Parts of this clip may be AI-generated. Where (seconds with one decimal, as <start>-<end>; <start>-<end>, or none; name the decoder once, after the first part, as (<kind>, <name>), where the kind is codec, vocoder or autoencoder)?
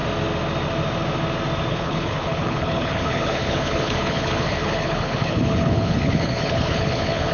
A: 1.7-7.3 (codec, HILCodec)